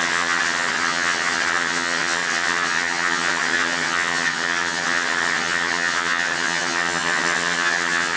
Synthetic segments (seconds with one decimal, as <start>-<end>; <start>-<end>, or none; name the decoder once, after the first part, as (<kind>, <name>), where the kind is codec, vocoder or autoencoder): 0.0-8.2 (vocoder, HiFi-GAN)

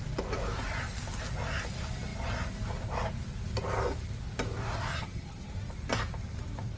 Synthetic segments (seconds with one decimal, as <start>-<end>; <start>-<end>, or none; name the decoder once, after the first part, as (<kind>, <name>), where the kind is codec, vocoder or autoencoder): 4.9-5.5 (vocoder, HiFi-GAN)

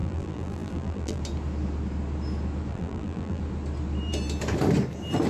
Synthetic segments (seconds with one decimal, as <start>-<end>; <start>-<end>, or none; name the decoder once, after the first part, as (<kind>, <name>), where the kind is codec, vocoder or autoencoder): 0.0-1.2 (vocoder, BigVGAN v2); 2.7-3.4

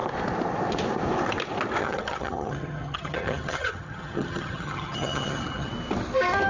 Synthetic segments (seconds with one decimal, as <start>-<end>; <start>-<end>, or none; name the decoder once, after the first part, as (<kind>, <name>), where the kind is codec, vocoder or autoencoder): 1.8-5.7 (vocoder, HiFi-GAN)

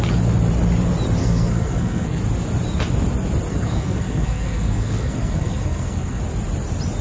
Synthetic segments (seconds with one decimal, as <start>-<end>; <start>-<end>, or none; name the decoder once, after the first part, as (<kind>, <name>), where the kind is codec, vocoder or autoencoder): 1.2-2.2 (codec, SNAC); 3.5-6.2